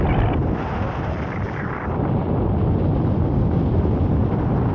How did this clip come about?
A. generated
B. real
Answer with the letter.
B